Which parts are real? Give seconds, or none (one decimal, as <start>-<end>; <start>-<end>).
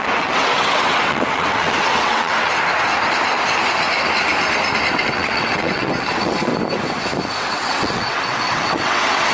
2.5-4.9; 6.5-7.4